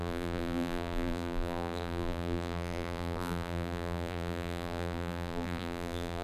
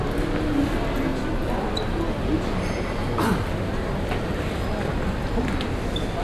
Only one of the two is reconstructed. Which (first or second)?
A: first